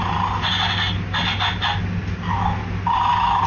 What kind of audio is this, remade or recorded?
recorded